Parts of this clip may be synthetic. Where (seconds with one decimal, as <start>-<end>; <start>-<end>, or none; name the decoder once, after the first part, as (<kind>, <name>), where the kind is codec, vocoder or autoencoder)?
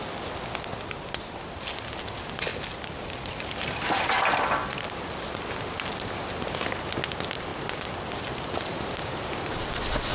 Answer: 2.5-3.0 (vocoder, BigVGAN v2); 4.6-6.4; 7.5-10.1